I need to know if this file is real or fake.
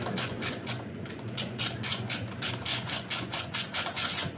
fake